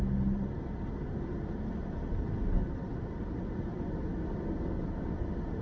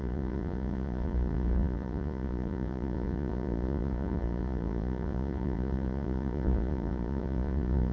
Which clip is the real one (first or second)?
first